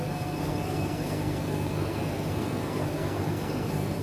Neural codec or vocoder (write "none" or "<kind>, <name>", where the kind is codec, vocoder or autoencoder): codec, SNAC